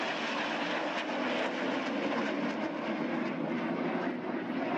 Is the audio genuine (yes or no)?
yes